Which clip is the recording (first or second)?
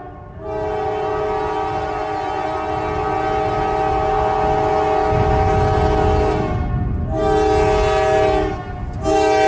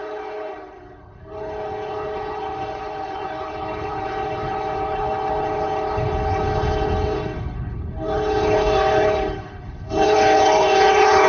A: first